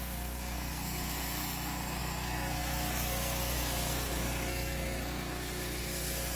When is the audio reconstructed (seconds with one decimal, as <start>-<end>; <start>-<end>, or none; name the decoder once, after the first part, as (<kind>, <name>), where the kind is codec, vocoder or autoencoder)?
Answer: 0.0-6.4 (codec, SNAC)